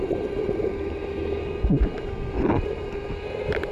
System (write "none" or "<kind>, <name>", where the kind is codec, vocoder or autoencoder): none